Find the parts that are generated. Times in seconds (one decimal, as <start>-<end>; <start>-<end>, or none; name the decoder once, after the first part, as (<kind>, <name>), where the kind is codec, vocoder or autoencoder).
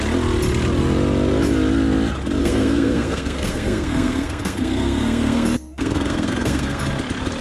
2.4-6.8 (codec, SNAC)